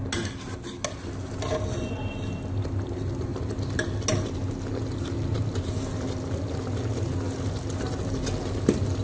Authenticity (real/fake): real